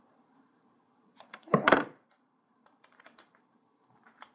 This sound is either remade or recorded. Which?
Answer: remade